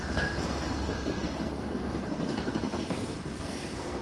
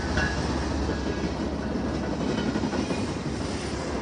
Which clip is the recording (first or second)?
second